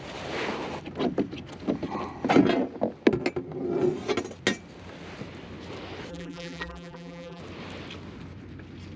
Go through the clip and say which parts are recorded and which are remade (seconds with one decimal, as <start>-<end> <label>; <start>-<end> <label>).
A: 0.0-6.1 recorded; 6.1-7.4 remade; 7.4-9.0 recorded